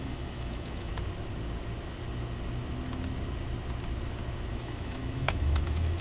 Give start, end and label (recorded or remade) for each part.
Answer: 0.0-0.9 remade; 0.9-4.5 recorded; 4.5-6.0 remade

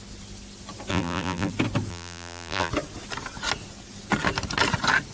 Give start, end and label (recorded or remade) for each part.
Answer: 0.0-0.9 recorded; 0.9-1.5 remade; 1.5-1.9 recorded; 1.9-2.7 remade; 2.7-5.1 recorded

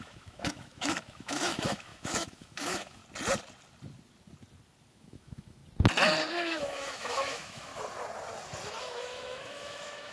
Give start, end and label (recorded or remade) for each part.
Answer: 0.0-3.0 remade; 3.0-4.9 recorded; 4.9-5.6 remade; 5.6-6.3 recorded; 6.3-7.7 remade; 7.7-8.8 recorded; 8.8-10.1 remade

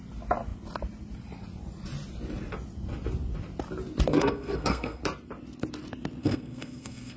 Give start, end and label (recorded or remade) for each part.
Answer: 0.0-4.1 recorded; 4.1-5.0 remade; 5.0-6.2 recorded; 6.2-7.2 remade